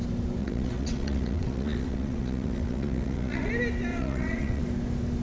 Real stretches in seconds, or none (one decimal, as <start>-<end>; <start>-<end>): 0.0-0.4; 3.5-3.9; 4.6-5.2